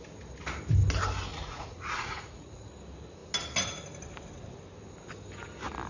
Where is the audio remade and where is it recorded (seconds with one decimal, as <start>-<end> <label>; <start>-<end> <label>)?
0.0-1.3 recorded; 1.3-2.7 remade; 2.7-5.9 recorded